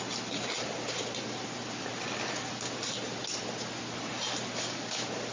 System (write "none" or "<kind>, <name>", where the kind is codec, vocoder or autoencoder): none